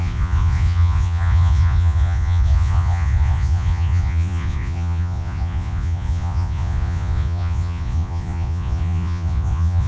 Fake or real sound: fake